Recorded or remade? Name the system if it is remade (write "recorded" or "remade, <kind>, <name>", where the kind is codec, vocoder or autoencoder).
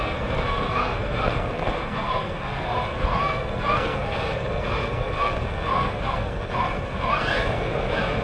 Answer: remade, codec, SNAC